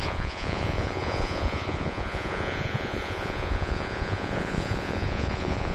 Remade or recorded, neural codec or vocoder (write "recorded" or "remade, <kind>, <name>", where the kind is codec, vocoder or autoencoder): remade, vocoder, Vocos